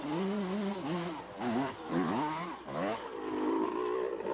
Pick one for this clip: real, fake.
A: real